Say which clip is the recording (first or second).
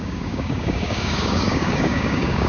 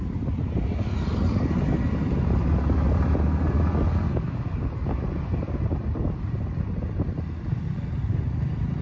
second